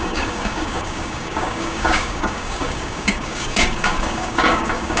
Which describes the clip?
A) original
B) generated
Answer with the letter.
B